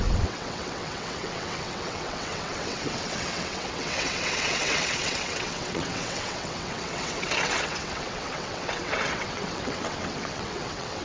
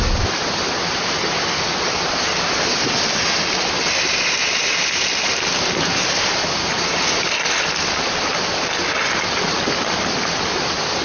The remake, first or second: first